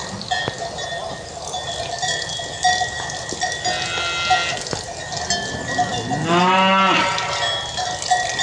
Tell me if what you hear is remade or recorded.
recorded